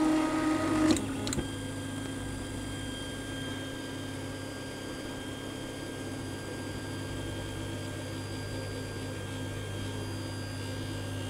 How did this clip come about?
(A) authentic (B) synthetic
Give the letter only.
A